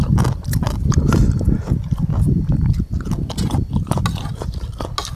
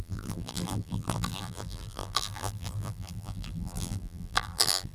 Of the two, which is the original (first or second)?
first